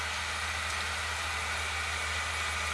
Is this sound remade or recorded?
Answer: recorded